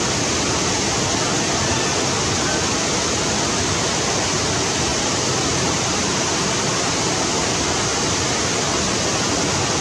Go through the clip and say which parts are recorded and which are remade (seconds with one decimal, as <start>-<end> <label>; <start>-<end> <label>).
0.0-4.9 recorded; 4.9-6.9 remade; 6.9-7.9 recorded; 7.9-8.6 remade; 8.6-9.8 recorded